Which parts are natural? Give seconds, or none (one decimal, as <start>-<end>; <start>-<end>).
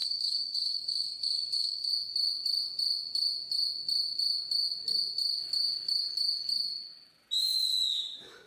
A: 1.9-8.5